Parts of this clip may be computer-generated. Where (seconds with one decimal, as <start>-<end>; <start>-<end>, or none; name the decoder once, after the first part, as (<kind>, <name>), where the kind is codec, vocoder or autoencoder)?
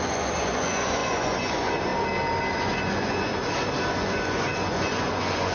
0.0-1.9 (vocoder, Vocos); 2.5-3.3; 3.9-5.5